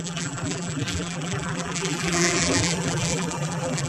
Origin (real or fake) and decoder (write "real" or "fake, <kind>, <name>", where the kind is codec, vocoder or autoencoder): fake, vocoder, BigVGAN v2